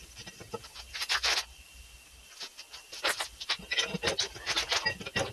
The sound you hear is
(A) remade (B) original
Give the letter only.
B